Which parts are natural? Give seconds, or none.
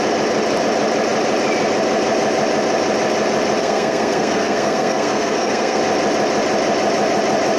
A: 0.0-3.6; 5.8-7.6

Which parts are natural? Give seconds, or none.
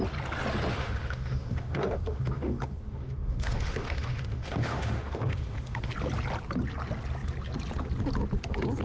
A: 0.0-0.7; 5.9-8.8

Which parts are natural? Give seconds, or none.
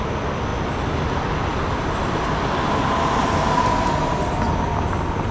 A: 0.0-5.3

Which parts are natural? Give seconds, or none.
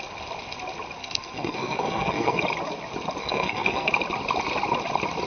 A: 0.0-1.0; 2.4-3.2; 3.9-5.3